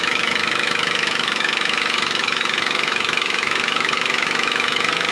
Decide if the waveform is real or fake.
fake